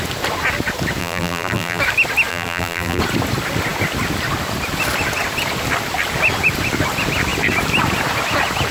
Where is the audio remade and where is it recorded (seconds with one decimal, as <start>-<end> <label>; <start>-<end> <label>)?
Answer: 0.0-1.0 recorded; 1.0-1.8 remade; 1.8-2.3 recorded; 2.3-3.0 remade; 3.0-8.7 recorded